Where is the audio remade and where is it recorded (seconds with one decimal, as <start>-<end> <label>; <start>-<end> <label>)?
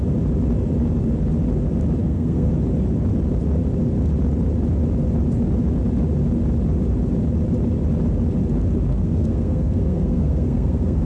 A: 0.0-2.0 recorded; 2.0-2.5 remade; 2.5-8.9 recorded; 8.9-11.1 remade